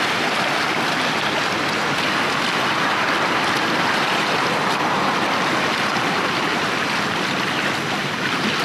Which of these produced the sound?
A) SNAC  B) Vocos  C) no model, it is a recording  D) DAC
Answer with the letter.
C